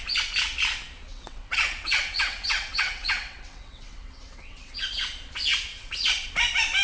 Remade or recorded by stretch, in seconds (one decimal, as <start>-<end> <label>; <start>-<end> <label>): 0.0-1.1 recorded; 1.1-5.0 remade; 5.0-5.7 recorded; 5.7-6.3 remade; 6.3-6.8 recorded